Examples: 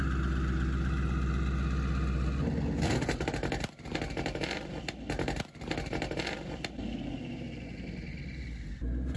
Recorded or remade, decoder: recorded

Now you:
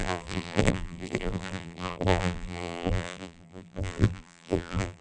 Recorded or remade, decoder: remade, vocoder, BigVGAN v2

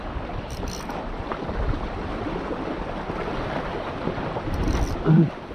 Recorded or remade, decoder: recorded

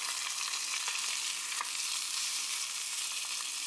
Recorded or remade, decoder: recorded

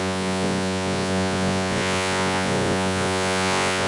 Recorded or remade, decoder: remade, vocoder, Vocos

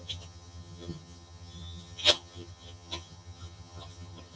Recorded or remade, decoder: remade, vocoder, HiFi-GAN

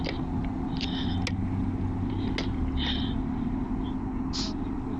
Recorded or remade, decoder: recorded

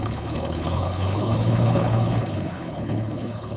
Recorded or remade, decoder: remade, codec, HILCodec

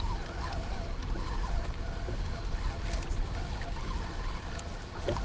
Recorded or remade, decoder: recorded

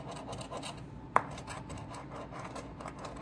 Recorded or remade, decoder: recorded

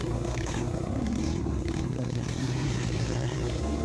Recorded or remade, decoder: remade, codec, SNAC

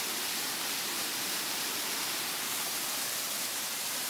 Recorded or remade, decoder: remade, vocoder, BigVGAN v2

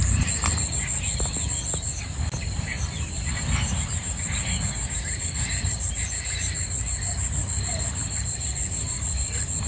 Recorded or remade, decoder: recorded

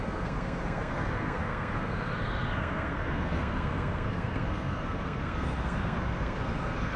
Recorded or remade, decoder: remade, codec, SNAC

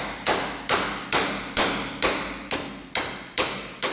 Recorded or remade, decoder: recorded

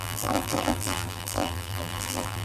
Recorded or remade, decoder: remade, vocoder, BigVGAN v2